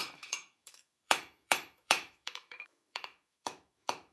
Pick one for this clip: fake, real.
fake